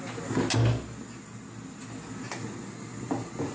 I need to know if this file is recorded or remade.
recorded